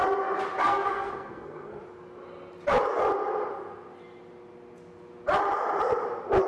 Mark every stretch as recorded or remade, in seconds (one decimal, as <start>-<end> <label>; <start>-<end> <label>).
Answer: 0.0-0.6 recorded; 0.6-1.8 remade; 1.8-6.5 recorded